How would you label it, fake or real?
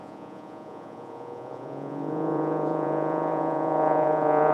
fake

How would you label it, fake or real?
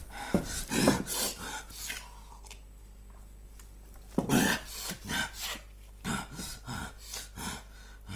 real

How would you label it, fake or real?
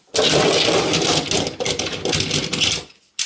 real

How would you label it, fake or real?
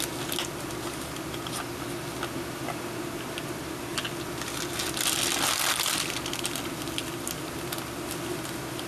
real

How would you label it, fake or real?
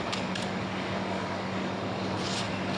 fake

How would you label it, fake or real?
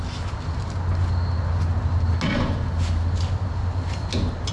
real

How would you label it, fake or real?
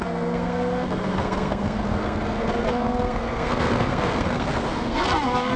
fake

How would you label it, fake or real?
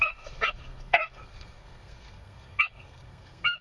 fake